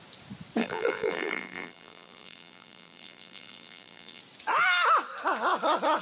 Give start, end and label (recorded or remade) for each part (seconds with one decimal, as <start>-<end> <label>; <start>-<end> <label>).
0.0-0.6 recorded; 0.6-4.2 remade; 4.2-6.0 recorded